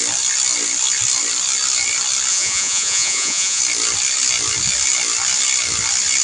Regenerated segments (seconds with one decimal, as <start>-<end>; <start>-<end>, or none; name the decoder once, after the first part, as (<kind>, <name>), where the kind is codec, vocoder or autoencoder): 2.3-3.6 (vocoder, Vocos)